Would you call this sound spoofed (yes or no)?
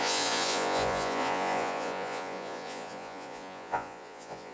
yes